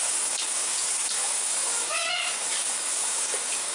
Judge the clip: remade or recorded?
remade